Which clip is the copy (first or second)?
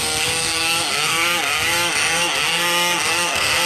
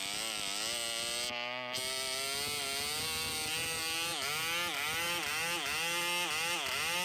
first